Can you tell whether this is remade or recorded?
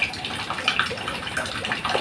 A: recorded